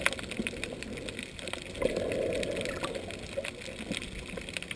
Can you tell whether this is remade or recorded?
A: recorded